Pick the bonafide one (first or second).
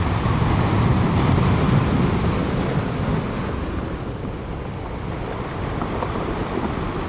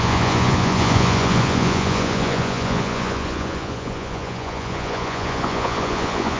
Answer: first